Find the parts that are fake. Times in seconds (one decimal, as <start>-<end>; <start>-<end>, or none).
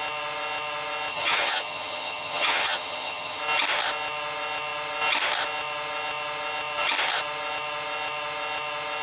1.1-3.4